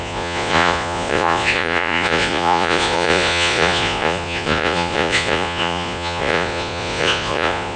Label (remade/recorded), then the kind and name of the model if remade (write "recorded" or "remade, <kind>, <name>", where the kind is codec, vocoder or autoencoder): remade, vocoder, Vocos